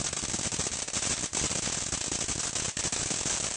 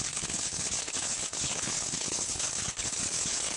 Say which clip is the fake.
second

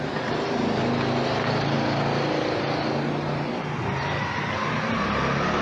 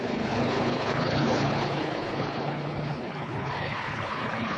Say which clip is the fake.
second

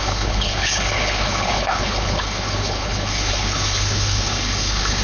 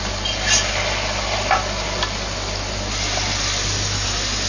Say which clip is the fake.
first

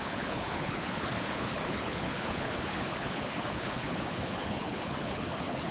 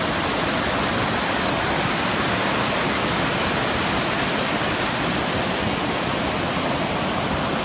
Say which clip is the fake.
first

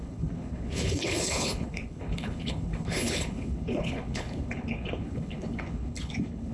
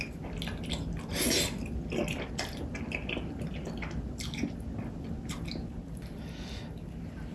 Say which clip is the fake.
first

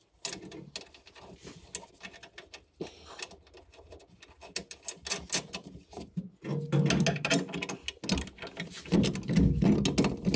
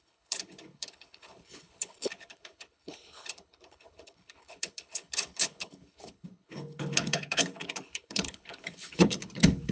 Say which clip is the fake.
second